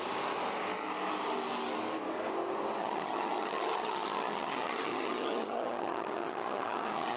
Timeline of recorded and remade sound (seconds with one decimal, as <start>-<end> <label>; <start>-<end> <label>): 0.0-2.8 recorded; 2.8-7.2 remade